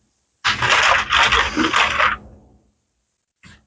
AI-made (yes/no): no